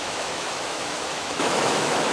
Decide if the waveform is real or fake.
fake